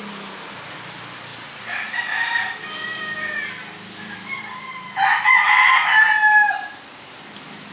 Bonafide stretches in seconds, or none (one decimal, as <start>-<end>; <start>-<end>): 0.0-7.7